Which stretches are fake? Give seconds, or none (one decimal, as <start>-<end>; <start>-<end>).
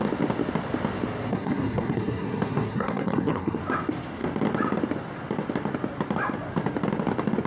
1.3-3.6